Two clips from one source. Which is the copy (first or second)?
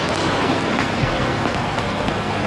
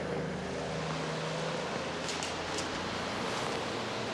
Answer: first